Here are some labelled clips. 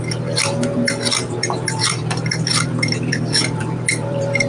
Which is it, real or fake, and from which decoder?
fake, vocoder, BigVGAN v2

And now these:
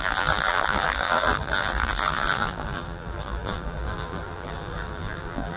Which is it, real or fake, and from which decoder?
fake, vocoder, BigVGAN v2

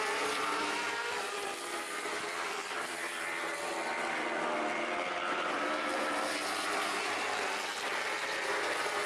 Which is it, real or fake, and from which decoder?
fake, vocoder, BigVGAN v2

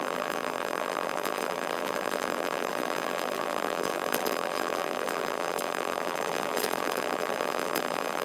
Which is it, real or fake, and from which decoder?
fake, vocoder, BigVGAN v2